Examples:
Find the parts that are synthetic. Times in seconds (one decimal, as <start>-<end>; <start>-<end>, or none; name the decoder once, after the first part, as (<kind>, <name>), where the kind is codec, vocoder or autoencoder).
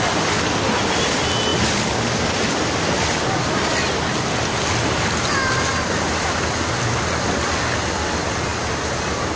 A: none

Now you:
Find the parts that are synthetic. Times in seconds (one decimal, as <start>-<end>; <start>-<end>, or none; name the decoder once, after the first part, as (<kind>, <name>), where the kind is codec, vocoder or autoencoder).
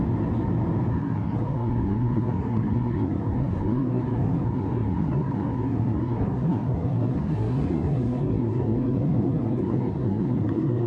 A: 0.9-10.9 (codec, SNAC)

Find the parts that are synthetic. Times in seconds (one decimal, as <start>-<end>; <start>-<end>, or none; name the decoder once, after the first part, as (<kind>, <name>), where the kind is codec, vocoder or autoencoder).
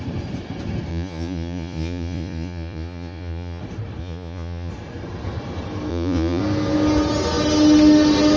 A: 0.9-3.6 (vocoder, Vocos); 4.0-4.7; 5.9-6.4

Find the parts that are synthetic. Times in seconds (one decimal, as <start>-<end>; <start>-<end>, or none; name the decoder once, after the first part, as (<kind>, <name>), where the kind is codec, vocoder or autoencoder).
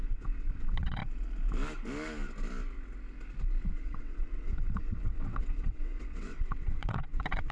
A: 0.0-1.0 (vocoder, WaveNeXt); 3.7-7.5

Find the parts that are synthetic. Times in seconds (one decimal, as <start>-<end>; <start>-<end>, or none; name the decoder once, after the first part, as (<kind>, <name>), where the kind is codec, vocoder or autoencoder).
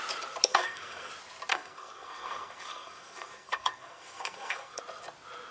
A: 0.5-1.1 (codec, SNAC); 1.5-4.8